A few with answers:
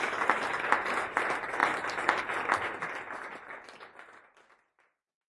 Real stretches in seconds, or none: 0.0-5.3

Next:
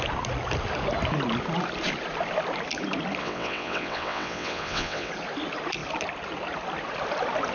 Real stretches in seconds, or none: 0.0-3.2; 5.1-7.5

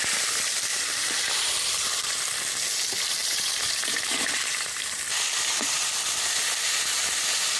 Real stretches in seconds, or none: 0.0-0.7; 2.1-3.2; 5.0-7.6

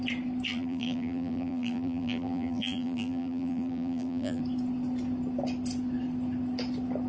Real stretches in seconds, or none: 0.0-0.5; 4.4-7.1

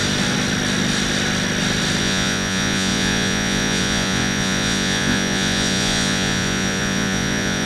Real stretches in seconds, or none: 0.0-2.0